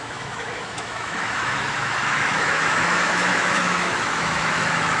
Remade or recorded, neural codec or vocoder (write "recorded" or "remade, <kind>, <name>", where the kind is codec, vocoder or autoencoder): remade, autoencoder, DAC-VAE